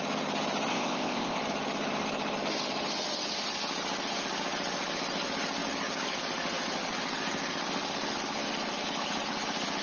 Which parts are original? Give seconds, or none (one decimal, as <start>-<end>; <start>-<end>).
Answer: 0.0-0.7; 1.4-9.8